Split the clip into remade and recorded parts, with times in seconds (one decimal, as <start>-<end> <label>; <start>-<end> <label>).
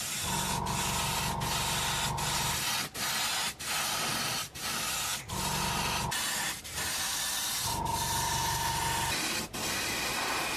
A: 0.0-10.6 recorded